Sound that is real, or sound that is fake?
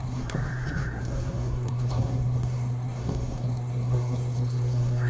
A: fake